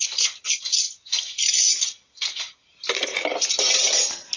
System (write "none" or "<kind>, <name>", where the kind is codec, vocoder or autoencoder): none